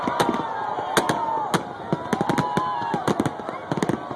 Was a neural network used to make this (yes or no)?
no